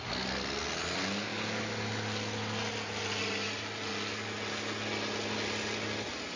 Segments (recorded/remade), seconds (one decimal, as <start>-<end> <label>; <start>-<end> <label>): 0.0-6.4 recorded